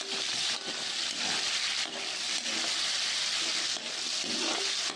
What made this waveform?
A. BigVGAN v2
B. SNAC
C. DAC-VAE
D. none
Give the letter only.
D